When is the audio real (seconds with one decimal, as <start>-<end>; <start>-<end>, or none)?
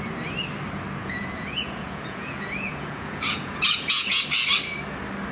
0.0-1.0; 4.2-5.3